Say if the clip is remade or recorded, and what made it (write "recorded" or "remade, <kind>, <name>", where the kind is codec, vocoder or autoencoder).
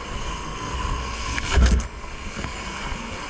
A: remade, codec, SNAC